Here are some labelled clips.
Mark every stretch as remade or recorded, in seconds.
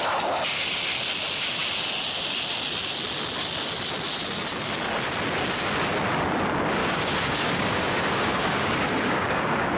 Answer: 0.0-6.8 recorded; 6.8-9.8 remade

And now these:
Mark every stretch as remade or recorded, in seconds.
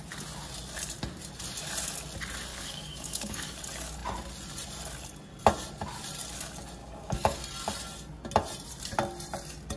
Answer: 0.0-2.5 recorded; 2.5-3.6 remade; 3.6-6.8 recorded; 6.8-7.4 remade; 7.4-9.8 recorded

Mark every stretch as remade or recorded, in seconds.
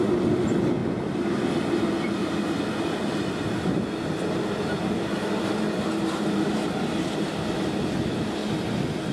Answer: 0.0-9.1 recorded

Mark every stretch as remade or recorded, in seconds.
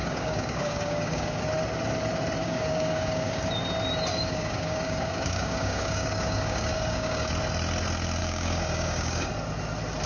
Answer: 0.0-1.4 remade; 1.4-2.4 recorded; 2.4-3.5 remade; 3.5-4.1 recorded; 4.1-7.3 remade; 7.3-8.2 recorded; 8.2-9.3 remade; 9.3-10.1 recorded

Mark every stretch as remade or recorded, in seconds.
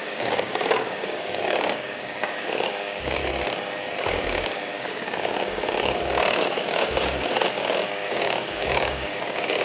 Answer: 0.0-3.2 remade; 3.2-4.0 recorded; 4.0-9.6 remade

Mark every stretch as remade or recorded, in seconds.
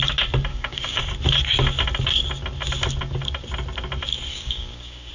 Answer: 0.0-0.5 recorded; 0.5-1.0 remade; 1.0-4.3 recorded; 4.3-5.1 remade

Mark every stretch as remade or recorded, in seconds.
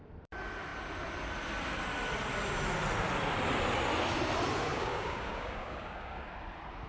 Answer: 0.0-4.7 recorded; 4.7-6.3 remade; 6.3-6.9 recorded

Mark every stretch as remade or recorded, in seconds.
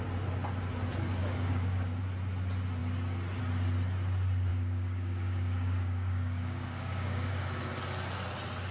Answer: 0.0-1.2 recorded; 1.2-2.0 remade; 2.0-4.5 recorded; 4.5-7.3 remade; 7.3-8.7 recorded